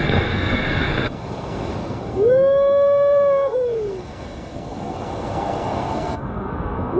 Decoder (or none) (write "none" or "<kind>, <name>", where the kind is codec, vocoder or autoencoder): codec, SNAC